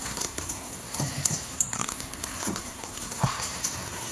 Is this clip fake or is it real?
fake